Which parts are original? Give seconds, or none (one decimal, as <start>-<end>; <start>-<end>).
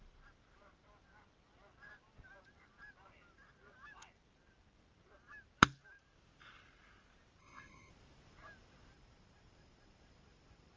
0.0-7.4; 7.9-10.8